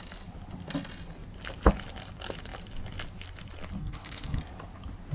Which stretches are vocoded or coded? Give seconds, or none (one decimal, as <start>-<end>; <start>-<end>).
3.8-4.4

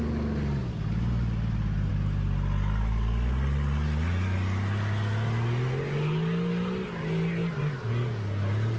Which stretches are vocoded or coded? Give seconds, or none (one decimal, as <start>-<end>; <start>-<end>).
none

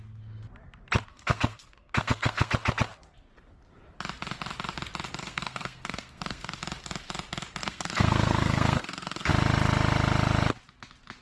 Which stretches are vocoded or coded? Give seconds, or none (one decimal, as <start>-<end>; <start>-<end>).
1.1-2.5; 5.2-6.6; 7.6-9.3

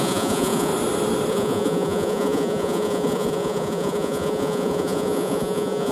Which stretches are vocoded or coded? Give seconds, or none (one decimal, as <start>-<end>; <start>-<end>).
0.0-0.7; 1.3-5.9

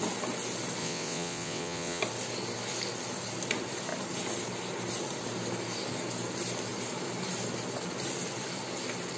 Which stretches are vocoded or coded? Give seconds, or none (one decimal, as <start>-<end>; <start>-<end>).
0.8-2.0

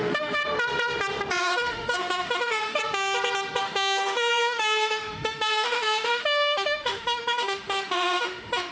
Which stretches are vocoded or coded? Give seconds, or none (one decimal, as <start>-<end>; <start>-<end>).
0.0-0.4; 1.4-2.8; 3.6-8.7

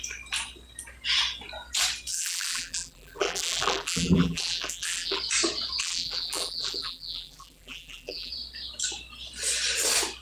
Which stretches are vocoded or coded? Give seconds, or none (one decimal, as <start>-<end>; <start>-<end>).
2.1-5.2; 5.8-8.3